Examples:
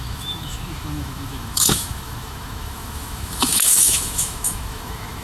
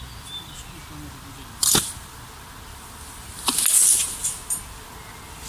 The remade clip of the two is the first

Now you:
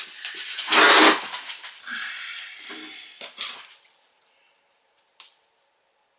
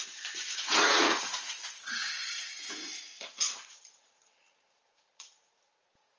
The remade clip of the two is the second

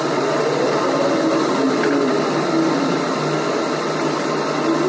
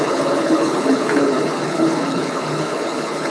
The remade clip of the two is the second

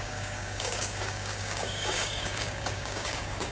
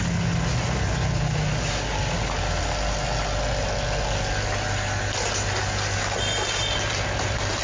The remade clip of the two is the first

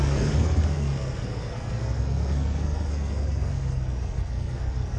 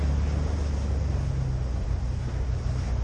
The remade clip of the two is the first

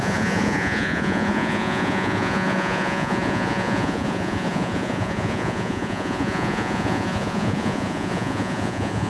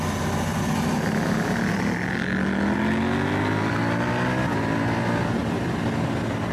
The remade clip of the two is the first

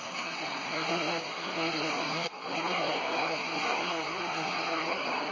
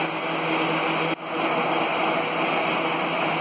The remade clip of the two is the first